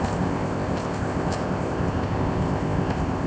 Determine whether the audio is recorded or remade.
remade